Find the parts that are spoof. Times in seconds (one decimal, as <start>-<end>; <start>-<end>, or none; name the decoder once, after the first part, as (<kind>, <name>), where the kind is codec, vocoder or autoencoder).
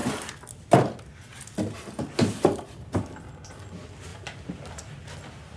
none